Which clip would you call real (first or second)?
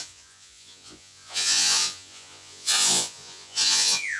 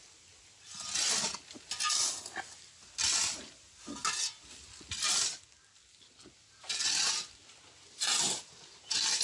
second